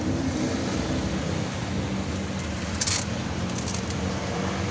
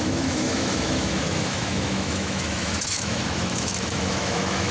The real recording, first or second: first